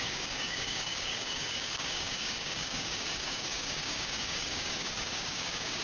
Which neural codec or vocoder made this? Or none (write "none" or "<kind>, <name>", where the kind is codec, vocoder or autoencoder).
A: codec, DAC